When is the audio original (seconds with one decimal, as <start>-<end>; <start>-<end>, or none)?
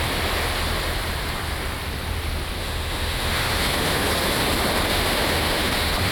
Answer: 0.0-2.6; 4.1-4.9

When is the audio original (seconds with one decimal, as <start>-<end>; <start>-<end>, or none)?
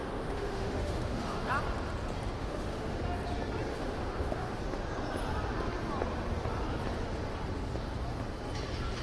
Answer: 1.5-2.4; 3.0-3.7; 4.6-9.0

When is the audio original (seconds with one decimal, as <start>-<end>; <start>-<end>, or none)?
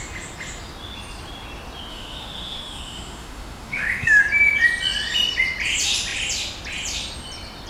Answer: 0.0-1.9; 4.2-7.7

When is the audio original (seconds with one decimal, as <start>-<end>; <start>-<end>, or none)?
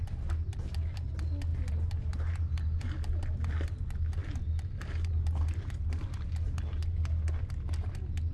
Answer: 0.0-8.3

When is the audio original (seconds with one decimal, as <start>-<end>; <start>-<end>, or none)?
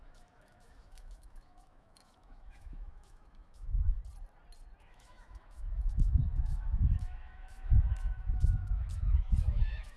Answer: 4.0-4.8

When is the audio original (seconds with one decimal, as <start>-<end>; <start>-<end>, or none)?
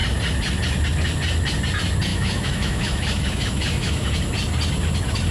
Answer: 0.0-2.1; 4.1-5.3